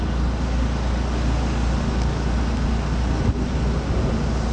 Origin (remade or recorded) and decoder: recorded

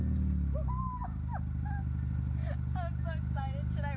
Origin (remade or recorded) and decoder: recorded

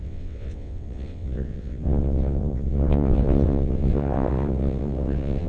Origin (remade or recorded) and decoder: remade, vocoder, WaveNeXt